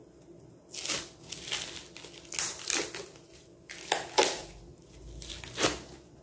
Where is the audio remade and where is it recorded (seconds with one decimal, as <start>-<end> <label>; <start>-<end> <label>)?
0.0-6.2 recorded